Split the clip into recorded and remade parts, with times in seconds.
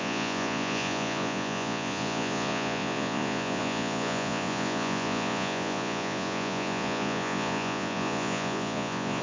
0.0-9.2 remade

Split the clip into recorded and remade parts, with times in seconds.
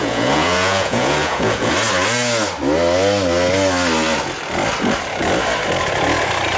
0.0-1.7 remade; 1.7-6.6 recorded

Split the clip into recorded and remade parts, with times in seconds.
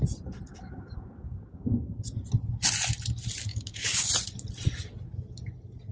0.0-0.5 recorded; 0.5-1.9 remade; 1.9-3.5 recorded; 3.5-4.1 remade; 4.1-5.9 recorded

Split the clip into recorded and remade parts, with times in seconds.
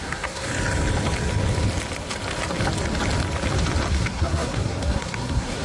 0.0-0.5 remade; 0.5-3.9 recorded; 3.9-5.6 remade